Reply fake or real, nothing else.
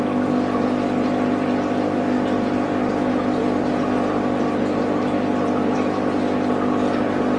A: real